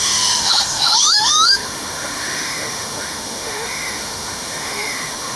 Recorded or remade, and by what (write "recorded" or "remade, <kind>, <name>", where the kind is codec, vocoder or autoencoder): remade, autoencoder, DAC-VAE